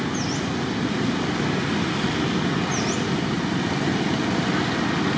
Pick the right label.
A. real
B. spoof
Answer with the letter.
A